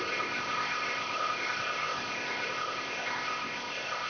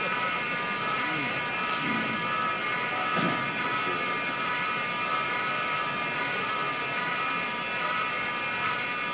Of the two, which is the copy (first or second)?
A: first